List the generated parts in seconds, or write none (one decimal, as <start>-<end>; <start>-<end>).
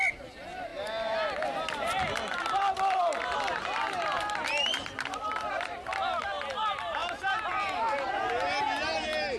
none